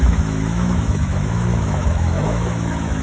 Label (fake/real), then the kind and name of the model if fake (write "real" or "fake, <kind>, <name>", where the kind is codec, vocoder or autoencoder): fake, autoencoder, DAC-VAE